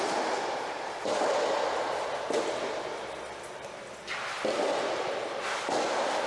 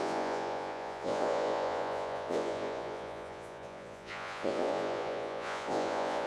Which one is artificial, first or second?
second